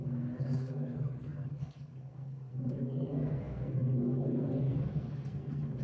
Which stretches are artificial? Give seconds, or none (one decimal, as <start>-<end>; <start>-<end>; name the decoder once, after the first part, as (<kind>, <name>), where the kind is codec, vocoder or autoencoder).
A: 0.0-5.8 (codec, SNAC)